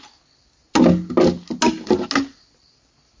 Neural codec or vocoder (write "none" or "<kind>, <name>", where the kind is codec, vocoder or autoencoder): none